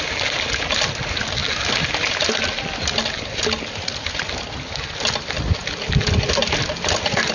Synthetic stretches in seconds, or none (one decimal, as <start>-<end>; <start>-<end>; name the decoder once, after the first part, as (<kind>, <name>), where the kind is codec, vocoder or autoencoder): none